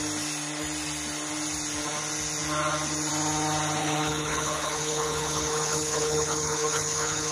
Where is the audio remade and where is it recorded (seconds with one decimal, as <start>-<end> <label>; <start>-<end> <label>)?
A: 0.0-3.8 recorded; 3.8-7.3 remade